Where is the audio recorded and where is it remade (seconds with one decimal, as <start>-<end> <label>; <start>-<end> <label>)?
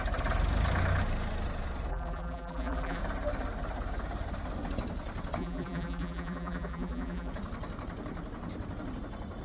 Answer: 0.0-1.9 recorded; 1.9-3.0 remade; 3.0-5.4 recorded; 5.4-7.3 remade; 7.3-9.4 recorded